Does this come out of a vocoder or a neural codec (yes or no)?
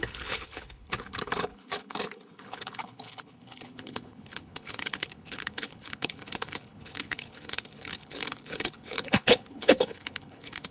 yes